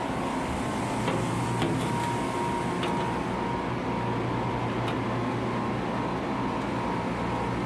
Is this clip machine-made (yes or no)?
no